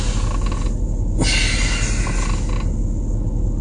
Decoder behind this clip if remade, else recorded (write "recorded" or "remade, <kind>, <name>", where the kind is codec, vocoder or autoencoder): recorded